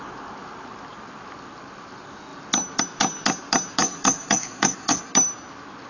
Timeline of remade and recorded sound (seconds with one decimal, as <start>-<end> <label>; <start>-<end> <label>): 0.0-3.8 recorded; 3.8-5.1 remade; 5.1-5.9 recorded